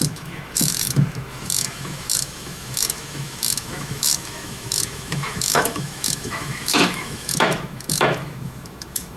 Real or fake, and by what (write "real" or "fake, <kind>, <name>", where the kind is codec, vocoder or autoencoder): fake, autoencoder, DAC-VAE